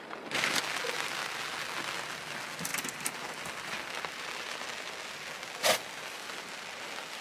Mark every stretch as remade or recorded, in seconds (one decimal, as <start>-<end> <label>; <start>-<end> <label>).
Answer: 0.0-7.2 recorded